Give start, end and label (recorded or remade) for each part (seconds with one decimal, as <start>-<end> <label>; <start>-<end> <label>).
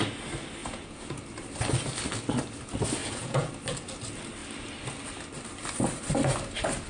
0.0-0.6 recorded; 0.6-1.2 remade; 1.2-3.0 recorded; 3.0-3.5 remade; 3.5-6.9 recorded